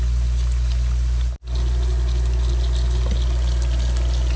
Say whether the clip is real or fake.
real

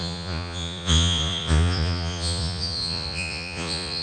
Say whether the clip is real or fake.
fake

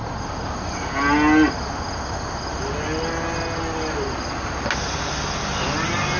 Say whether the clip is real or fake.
real